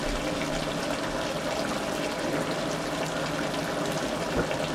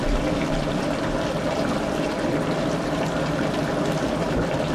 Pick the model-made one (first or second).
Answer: second